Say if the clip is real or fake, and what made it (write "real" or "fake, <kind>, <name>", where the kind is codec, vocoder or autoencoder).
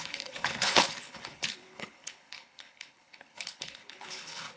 fake, codec, HILCodec